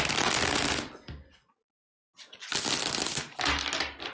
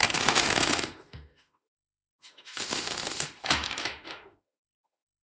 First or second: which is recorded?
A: first